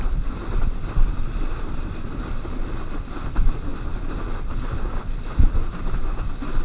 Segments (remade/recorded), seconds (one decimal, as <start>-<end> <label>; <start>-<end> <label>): 0.0-6.6 recorded